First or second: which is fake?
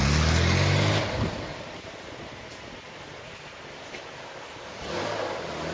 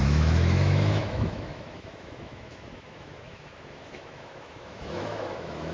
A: second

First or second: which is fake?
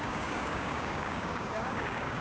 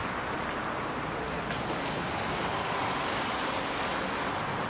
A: first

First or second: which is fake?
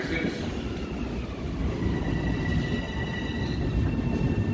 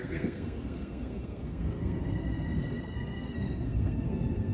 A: second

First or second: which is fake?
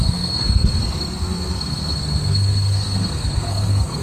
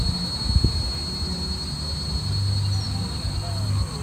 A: first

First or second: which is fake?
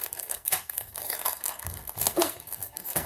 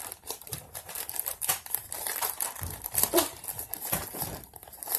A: first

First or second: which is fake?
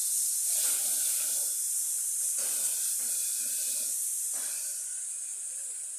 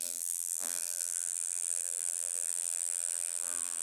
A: second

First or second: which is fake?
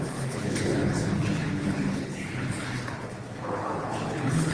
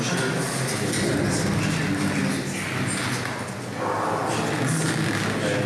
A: first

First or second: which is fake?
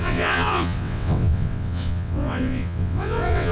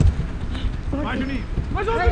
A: first